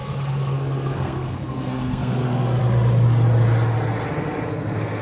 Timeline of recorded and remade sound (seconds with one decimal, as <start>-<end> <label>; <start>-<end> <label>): 0.0-2.6 remade; 2.6-4.5 recorded; 4.5-5.0 remade